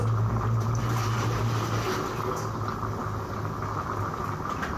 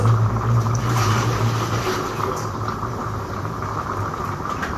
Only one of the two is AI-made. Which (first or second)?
second